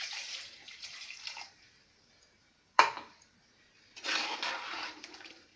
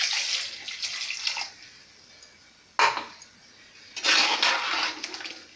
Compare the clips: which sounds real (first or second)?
second